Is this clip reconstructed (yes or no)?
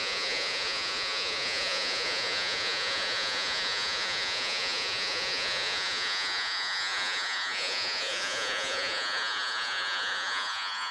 yes